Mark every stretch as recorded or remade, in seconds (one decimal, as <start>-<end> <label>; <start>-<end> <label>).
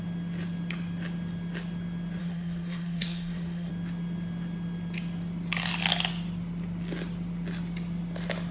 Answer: 0.0-2.2 recorded; 2.2-3.7 remade; 3.7-8.5 recorded